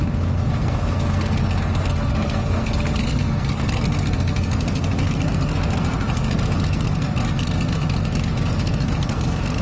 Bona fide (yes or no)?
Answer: no